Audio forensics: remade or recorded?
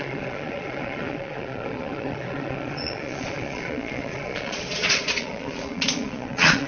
remade